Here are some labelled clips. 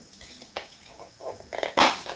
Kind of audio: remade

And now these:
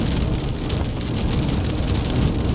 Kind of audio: recorded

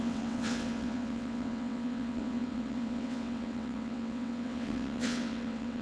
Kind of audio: remade